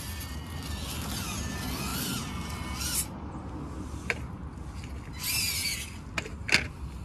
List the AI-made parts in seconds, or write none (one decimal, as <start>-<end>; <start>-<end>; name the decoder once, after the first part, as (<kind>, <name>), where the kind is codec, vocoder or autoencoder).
none